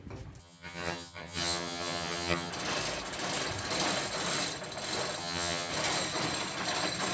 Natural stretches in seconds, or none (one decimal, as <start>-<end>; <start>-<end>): 0.0-0.4; 2.5-5.2; 5.7-7.1